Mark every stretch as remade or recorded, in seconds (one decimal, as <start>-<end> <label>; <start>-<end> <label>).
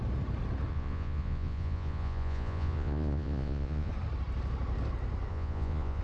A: 0.0-0.7 recorded; 0.7-3.9 remade; 3.9-5.3 recorded; 5.3-6.0 remade